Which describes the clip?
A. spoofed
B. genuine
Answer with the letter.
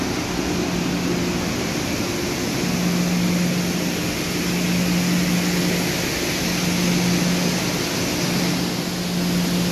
B